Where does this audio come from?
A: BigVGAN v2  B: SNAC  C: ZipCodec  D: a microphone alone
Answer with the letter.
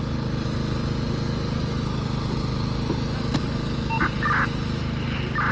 D